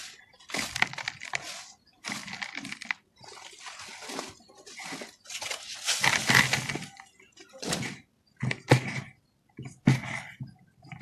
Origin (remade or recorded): recorded